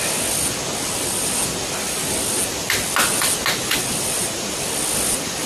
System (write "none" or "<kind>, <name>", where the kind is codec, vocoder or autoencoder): none